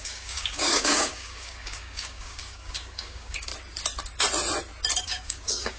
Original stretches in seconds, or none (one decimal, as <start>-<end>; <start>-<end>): 3.5-5.0